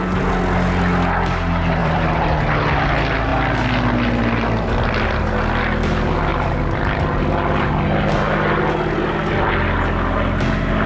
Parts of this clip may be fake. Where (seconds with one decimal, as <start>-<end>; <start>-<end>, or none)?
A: 1.8-2.4; 6.3-7.7